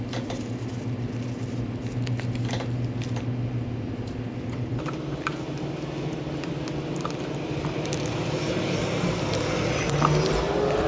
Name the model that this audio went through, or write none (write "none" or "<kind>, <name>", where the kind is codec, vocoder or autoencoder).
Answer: none